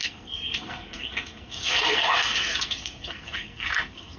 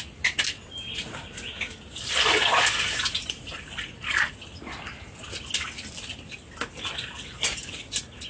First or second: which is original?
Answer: second